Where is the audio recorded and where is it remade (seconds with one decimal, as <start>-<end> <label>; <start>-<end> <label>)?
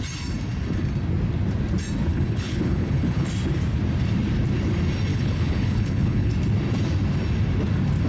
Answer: 0.0-2.1 recorded; 2.1-3.3 remade; 3.3-5.1 recorded; 5.1-6.3 remade; 6.3-8.1 recorded